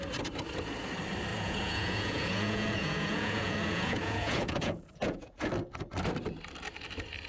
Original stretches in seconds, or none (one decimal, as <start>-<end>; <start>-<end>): 0.0-1.3; 5.5-7.3